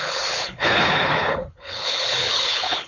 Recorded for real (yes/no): no